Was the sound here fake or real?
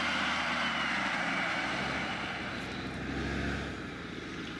real